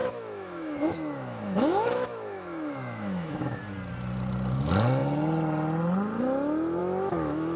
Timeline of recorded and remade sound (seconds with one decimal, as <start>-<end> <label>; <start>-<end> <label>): 0.0-3.6 remade; 3.6-6.8 recorded; 6.8-7.6 remade